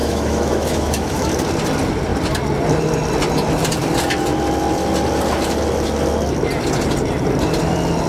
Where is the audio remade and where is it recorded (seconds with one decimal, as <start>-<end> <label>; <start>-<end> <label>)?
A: 0.0-1.3 remade; 1.3-8.1 recorded